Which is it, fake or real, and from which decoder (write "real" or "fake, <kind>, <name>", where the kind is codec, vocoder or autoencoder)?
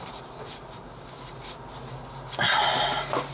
real